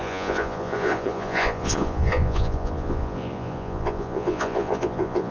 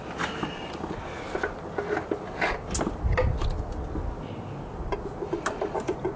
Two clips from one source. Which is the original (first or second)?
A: second